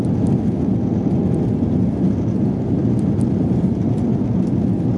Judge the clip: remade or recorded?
recorded